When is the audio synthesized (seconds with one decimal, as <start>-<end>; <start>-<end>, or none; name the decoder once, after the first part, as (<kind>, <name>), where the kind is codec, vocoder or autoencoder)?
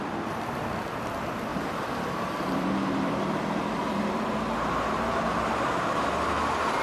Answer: 1.5-5.6 (vocoder, BigVGAN v2)